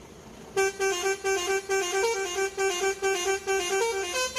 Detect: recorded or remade recorded